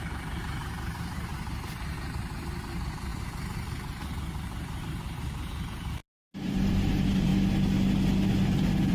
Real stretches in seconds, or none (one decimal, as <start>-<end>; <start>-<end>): 7.3-8.9